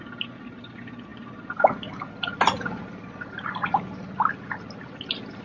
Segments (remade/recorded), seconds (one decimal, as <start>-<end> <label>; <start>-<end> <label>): 0.0-5.4 recorded

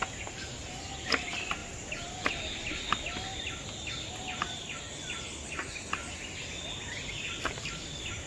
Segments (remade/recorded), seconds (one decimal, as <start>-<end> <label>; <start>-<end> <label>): 0.0-8.3 recorded

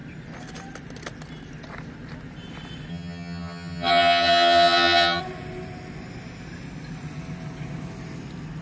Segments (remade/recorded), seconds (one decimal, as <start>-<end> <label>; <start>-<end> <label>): 0.0-2.9 recorded; 2.9-5.2 remade; 5.2-8.6 recorded

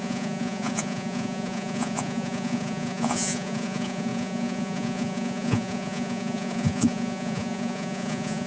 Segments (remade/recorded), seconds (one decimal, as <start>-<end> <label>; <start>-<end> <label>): 0.0-8.5 remade

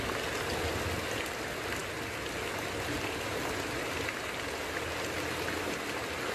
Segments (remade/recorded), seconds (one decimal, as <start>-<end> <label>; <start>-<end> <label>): 0.0-6.3 recorded

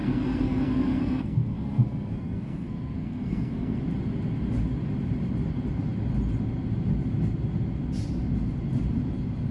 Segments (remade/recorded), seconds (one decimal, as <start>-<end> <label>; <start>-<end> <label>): 0.0-3.8 remade; 3.8-9.5 recorded

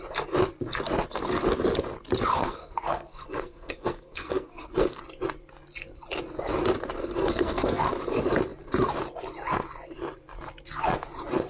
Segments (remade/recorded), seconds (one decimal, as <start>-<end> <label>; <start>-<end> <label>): 0.0-2.3 recorded; 2.3-5.0 remade; 5.0-7.0 recorded; 7.0-7.8 remade; 7.8-11.5 recorded